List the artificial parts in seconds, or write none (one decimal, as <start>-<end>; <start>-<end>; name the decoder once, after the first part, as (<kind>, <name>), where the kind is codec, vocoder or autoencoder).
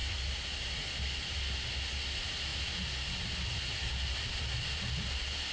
none